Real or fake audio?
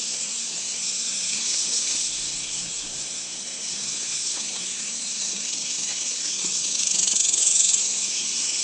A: fake